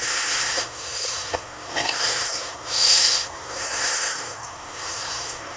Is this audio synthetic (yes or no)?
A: yes